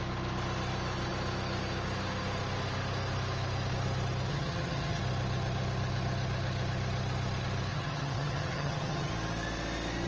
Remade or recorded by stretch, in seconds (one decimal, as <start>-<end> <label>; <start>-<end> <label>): 0.0-4.3 recorded; 4.3-5.0 remade; 5.0-7.7 recorded; 7.7-9.1 remade; 9.1-10.1 recorded